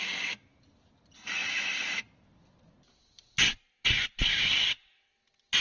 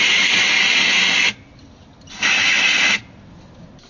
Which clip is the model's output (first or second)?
first